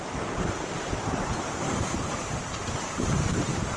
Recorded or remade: remade